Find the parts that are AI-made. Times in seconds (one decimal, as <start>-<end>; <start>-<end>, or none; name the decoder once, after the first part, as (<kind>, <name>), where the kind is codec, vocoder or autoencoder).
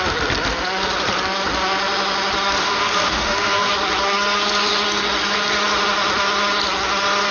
2.6-3.7 (autoencoder, DAC-VAE)